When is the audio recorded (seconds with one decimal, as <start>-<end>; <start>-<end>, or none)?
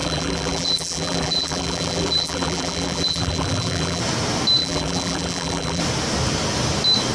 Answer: 4.0-4.6; 5.8-7.1